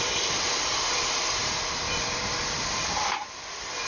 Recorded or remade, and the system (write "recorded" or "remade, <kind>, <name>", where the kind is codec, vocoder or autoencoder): remade, vocoder, BigVGAN v2